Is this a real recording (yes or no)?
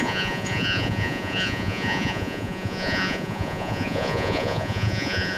no